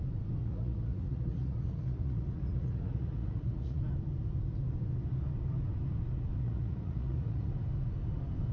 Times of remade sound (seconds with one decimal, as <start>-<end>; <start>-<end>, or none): 0.4-3.8; 6.4-7.5